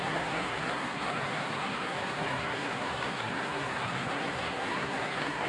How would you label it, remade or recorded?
remade